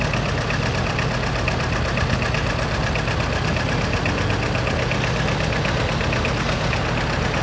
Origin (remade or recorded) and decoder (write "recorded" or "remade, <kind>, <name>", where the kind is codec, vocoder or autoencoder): recorded